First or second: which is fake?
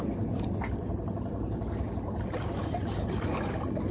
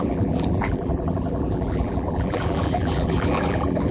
second